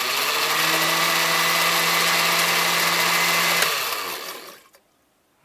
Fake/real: real